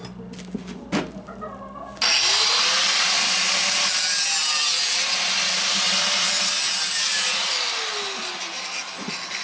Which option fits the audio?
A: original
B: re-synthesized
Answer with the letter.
A